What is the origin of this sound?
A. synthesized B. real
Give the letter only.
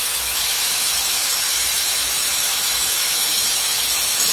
A